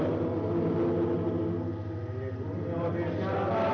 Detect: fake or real real